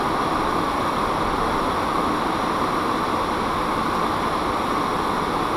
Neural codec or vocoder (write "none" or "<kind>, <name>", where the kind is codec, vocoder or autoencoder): none